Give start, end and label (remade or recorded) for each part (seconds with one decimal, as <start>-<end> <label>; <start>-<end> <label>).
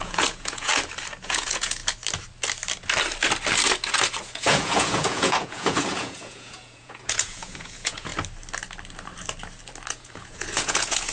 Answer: 0.0-0.7 remade; 0.7-1.2 recorded; 1.2-1.8 remade; 1.8-4.2 recorded; 4.2-8.1 remade; 8.1-9.9 recorded; 9.9-11.1 remade